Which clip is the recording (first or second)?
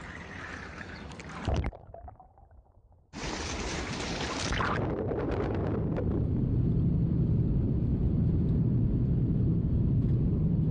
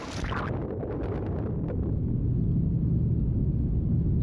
second